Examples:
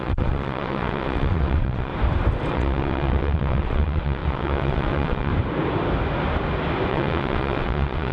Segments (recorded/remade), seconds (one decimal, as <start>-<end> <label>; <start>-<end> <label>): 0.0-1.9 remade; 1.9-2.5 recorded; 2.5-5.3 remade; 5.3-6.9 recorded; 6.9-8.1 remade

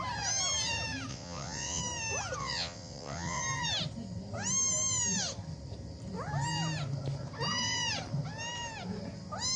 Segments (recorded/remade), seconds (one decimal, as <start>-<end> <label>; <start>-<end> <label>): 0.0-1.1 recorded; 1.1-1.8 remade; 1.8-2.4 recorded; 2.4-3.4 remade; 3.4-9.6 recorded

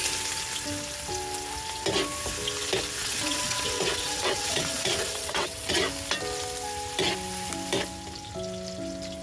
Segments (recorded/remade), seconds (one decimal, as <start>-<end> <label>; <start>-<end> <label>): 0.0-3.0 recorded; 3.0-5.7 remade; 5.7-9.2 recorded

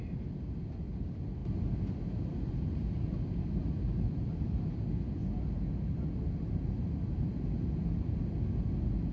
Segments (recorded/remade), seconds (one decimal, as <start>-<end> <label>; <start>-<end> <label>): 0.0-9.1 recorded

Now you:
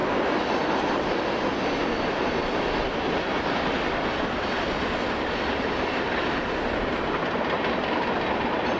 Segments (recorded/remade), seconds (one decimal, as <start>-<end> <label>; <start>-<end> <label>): 0.0-8.8 recorded